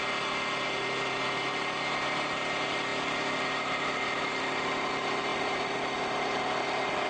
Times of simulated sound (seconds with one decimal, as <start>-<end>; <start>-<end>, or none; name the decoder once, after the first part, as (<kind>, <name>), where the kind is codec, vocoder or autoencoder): 2.9-4.7 (vocoder, BigVGAN v2); 5.3-6.6